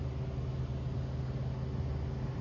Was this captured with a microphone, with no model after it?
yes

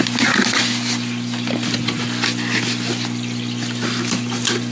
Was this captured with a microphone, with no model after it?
yes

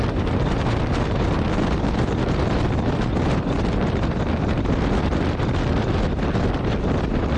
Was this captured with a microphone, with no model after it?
yes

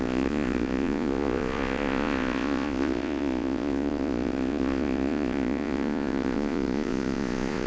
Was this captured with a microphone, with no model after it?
no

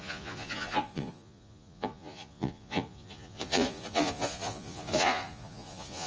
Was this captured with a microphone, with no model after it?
no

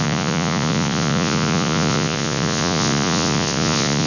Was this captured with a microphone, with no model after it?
no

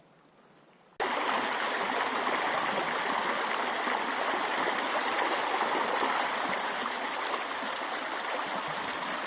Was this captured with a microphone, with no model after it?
yes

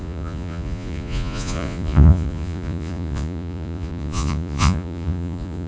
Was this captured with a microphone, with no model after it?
no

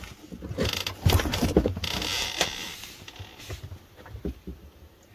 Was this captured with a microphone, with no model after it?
yes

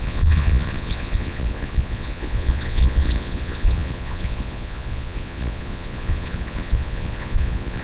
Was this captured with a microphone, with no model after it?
no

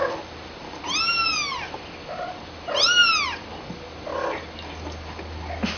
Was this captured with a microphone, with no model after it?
yes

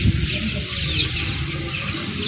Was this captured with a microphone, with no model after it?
yes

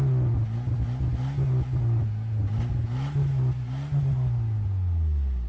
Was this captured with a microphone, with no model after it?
yes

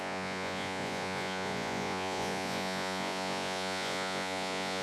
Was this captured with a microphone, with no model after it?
no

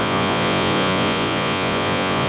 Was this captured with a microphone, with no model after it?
no